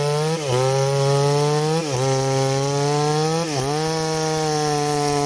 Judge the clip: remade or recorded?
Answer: recorded